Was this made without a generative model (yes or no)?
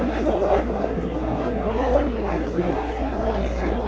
no